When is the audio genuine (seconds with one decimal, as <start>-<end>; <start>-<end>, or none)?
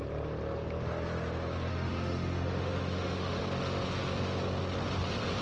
0.0-1.7; 3.4-5.4